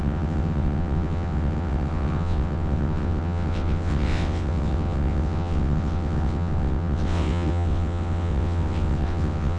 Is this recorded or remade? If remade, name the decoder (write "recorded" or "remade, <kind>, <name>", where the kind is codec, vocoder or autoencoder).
remade, vocoder, WaveNeXt